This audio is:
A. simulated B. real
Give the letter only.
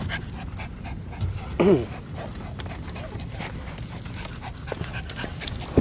B